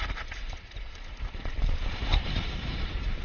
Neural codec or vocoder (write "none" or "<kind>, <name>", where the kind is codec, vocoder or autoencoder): vocoder, BigVGAN v2